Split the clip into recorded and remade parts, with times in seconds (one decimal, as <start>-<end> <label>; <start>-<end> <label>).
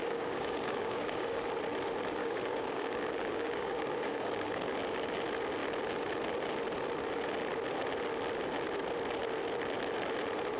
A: 0.0-1.4 remade; 1.4-2.2 recorded; 2.2-4.7 remade; 4.7-10.6 recorded